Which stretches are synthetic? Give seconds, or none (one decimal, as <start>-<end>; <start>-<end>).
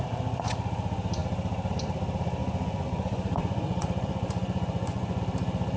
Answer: 2.4-5.2